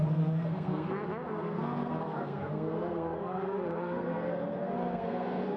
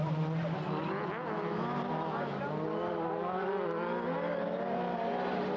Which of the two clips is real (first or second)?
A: second